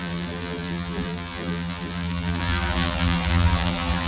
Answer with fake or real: fake